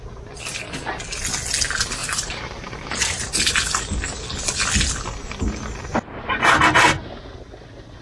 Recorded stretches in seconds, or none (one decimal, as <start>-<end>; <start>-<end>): 0.0-2.0; 3.5-5.9; 6.5-8.0

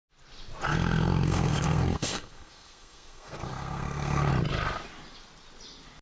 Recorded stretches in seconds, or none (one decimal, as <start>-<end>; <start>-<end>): 0.0-0.7; 4.3-6.0

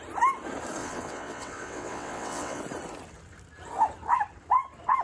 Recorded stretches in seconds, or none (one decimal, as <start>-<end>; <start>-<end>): 0.0-0.8; 2.6-5.0

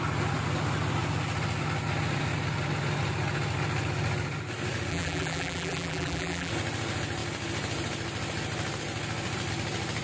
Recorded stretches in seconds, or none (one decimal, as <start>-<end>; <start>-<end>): 0.0-4.9; 6.5-10.0

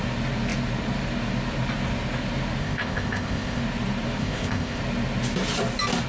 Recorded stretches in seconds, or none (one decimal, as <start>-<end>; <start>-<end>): 0.0-2.6; 3.6-4.2; 4.8-6.1

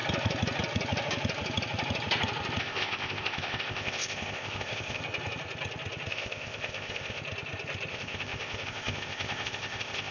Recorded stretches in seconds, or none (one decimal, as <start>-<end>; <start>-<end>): 0.0-2.6; 5.0-6.1; 7.2-7.9

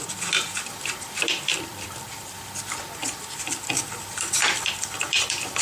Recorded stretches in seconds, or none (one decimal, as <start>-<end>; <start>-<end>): none

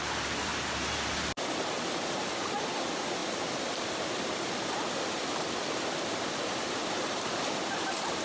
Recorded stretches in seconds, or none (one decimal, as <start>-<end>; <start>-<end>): 0.5-2.3